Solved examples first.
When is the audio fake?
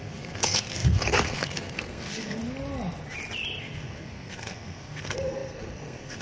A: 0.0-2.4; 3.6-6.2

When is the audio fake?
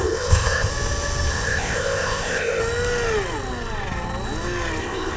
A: 0.0-0.7; 1.3-2.6; 4.8-5.2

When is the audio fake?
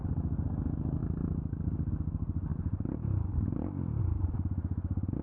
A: 2.5-4.0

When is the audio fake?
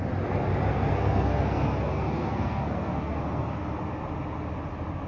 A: 0.7-3.8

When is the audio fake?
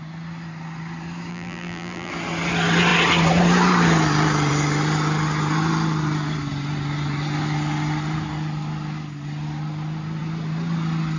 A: 1.3-2.1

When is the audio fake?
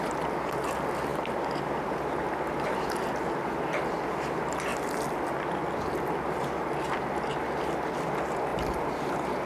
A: 8.5-9.1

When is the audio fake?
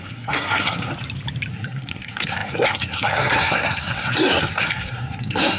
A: 0.0-0.9; 1.5-5.6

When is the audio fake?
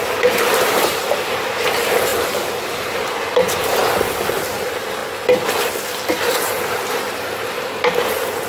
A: 0.0-3.8; 4.5-5.0; 6.1-8.5